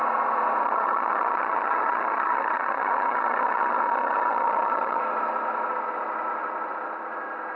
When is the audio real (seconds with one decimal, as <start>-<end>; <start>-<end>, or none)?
0.0-0.6; 5.0-7.6